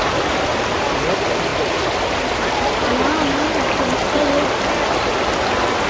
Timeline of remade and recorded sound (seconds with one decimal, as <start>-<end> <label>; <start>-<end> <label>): 0.0-5.9 recorded